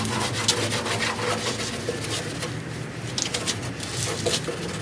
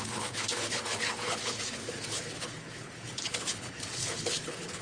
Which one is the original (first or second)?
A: first